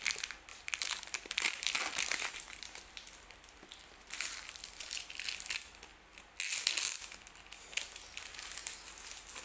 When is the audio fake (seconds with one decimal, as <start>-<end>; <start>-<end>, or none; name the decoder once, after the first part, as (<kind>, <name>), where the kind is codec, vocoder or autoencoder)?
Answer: 0.5-5.1 (vocoder, BigVGAN v2)